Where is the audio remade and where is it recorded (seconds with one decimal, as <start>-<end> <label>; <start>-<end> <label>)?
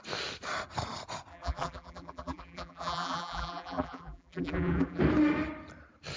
0.0-1.3 recorded; 1.3-5.0 remade; 5.0-6.2 recorded